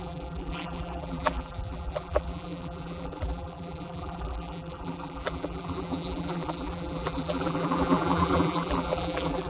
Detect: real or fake fake